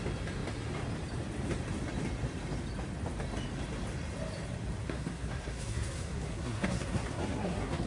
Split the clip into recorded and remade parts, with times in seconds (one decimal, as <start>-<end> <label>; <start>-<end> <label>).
0.0-4.8 recorded; 4.8-7.9 remade